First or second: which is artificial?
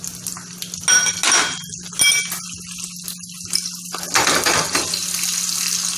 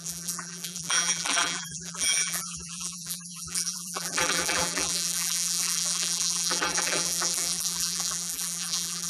second